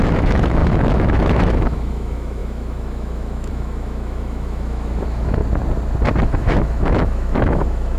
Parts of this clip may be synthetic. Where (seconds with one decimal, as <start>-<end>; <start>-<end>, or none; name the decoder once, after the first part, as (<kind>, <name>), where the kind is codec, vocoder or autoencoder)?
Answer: 0.0-5.4 (autoencoder, DAC-VAE); 6.2-8.0